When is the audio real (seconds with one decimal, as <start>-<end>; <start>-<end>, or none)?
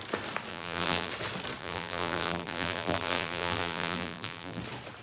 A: 0.0-0.5; 1.1-1.6; 4.6-5.0